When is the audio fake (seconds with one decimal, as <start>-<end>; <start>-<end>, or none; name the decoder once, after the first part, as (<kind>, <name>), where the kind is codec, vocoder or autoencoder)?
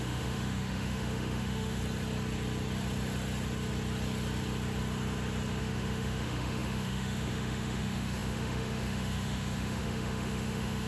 0.0-1.8 (autoencoder, DAC-VAE); 5.6-10.9